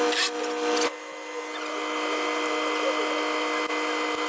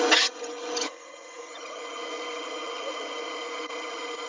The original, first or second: first